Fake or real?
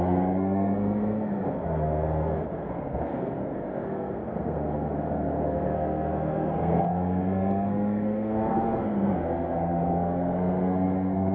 fake